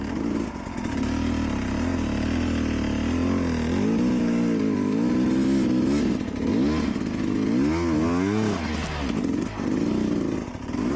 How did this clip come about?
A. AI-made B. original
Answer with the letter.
B